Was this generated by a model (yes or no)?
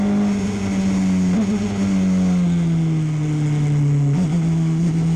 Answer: no